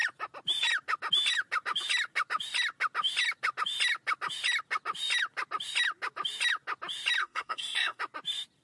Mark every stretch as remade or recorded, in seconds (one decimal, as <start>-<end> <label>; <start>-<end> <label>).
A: 0.0-7.2 recorded; 7.2-8.0 remade; 8.0-8.6 recorded